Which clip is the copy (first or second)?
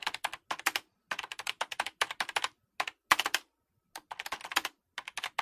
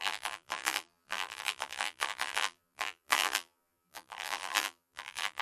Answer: second